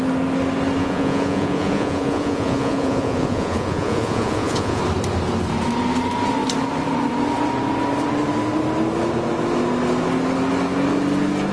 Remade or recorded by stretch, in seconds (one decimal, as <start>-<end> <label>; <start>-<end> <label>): 0.0-0.8 recorded; 0.8-4.8 remade; 4.8-11.5 recorded